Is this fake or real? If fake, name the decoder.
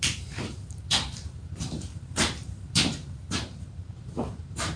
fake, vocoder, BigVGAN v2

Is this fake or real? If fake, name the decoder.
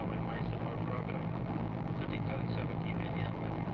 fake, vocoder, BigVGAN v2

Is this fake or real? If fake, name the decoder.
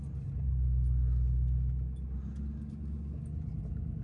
real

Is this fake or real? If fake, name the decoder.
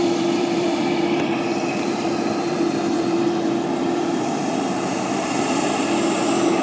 fake, vocoder, BigVGAN v2